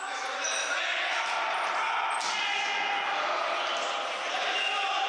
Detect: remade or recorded recorded